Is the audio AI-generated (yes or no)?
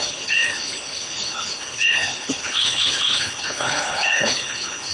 yes